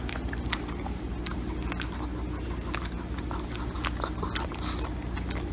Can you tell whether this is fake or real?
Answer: real